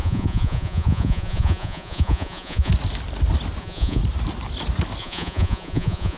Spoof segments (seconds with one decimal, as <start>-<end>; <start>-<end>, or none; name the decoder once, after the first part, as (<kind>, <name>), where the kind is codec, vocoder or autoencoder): 0.0-2.7 (vocoder, Vocos); 3.6-4.0; 5.0-6.2

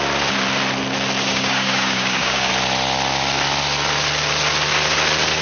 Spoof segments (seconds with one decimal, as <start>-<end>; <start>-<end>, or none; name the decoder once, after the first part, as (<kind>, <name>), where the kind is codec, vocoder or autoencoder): 1.3-2.5 (codec, DAC)

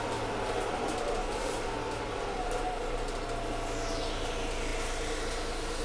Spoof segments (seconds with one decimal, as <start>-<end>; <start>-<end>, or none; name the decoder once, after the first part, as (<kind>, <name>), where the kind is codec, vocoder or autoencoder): none

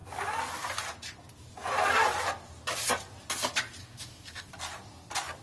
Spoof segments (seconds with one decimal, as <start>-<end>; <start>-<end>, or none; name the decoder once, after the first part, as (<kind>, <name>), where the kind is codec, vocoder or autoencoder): 3.8-4.5 (codec, DAC)

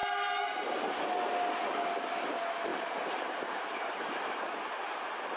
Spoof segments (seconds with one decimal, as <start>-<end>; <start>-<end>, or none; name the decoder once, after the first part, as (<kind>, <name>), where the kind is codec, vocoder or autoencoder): 0.0-0.8 (vocoder, BigVGAN v2); 2.7-4.5